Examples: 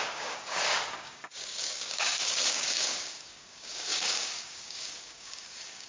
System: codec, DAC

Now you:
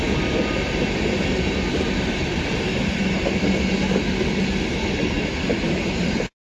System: none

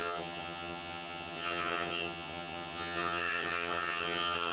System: vocoder, HiFi-GAN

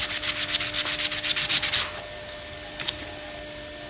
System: none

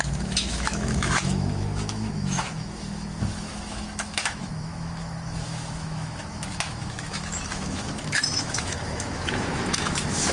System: autoencoder, DAC-VAE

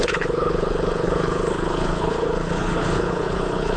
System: codec, HILCodec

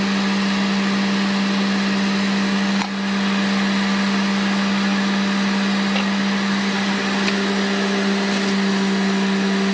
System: none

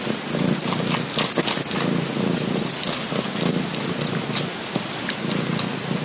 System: none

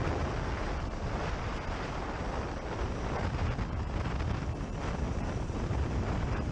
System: none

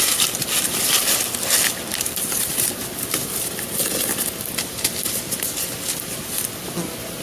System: none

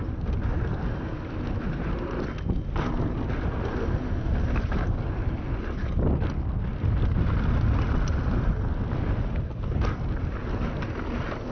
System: none